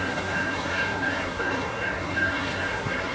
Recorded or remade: remade